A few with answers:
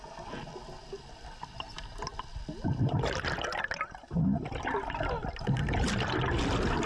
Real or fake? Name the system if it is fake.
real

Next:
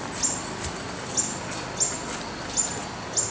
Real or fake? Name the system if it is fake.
real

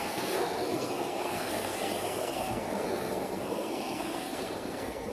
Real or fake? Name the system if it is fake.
fake, codec, SNAC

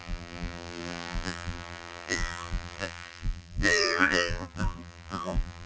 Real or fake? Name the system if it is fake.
fake, vocoder, BigVGAN v2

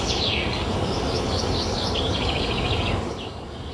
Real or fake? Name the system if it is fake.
fake, codec, DAC